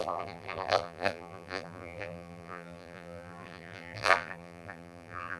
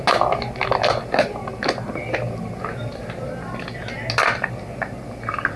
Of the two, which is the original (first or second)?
second